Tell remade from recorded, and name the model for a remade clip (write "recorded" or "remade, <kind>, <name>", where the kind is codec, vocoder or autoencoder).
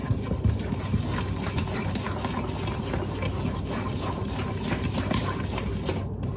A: recorded